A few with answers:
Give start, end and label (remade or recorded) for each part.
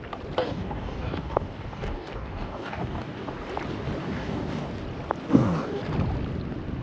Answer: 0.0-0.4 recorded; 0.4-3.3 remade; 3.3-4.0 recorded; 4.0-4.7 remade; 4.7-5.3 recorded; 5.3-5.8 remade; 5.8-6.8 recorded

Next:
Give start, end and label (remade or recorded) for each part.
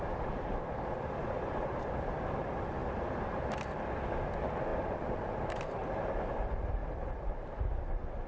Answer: 0.0-8.3 recorded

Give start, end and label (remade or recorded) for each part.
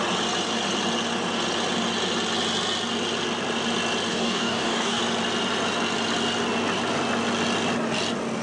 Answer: 0.0-4.1 recorded; 4.1-5.0 remade; 5.0-8.4 recorded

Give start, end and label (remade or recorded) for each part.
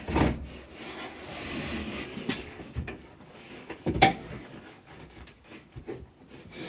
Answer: 0.0-1.8 recorded; 1.8-5.8 remade; 5.8-6.7 recorded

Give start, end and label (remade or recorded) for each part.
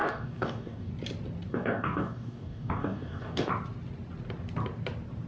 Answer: 0.0-0.9 remade; 0.9-1.5 recorded; 1.5-3.5 remade; 3.5-5.3 recorded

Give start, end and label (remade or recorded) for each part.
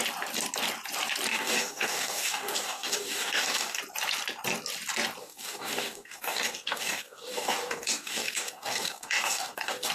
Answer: 0.0-1.3 recorded; 1.3-3.8 remade; 3.8-5.2 recorded; 5.2-9.9 remade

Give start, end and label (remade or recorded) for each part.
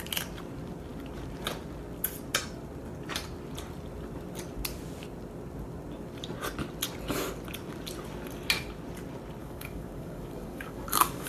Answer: 0.0-9.4 recorded; 9.4-11.3 remade